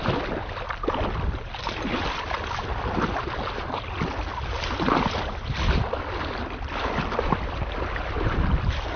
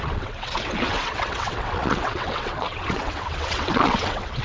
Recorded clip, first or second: first